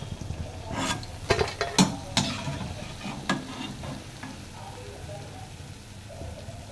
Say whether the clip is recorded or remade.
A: recorded